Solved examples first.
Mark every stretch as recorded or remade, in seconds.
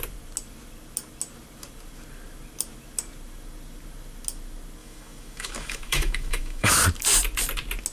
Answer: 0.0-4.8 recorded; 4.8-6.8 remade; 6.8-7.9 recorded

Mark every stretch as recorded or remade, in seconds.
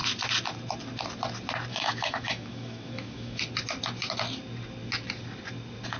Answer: 0.0-1.7 recorded; 1.7-3.4 remade; 3.4-6.0 recorded